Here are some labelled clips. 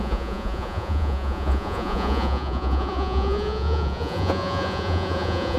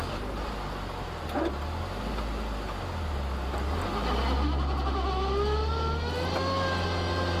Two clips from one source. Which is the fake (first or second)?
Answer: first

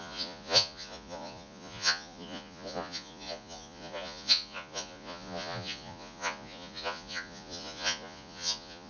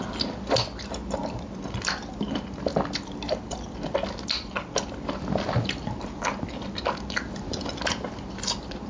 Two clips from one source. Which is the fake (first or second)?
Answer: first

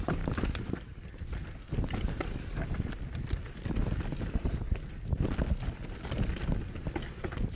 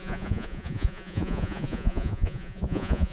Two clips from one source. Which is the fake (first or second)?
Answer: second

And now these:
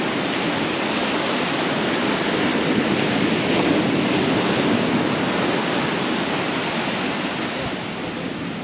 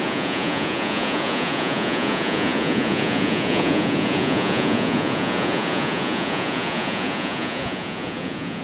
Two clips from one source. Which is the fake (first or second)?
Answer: second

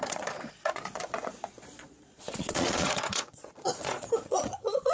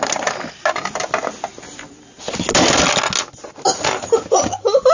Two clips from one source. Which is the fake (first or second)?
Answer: first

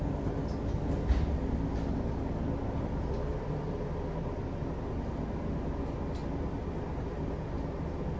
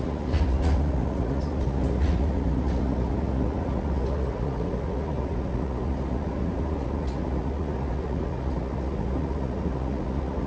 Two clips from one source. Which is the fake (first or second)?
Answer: second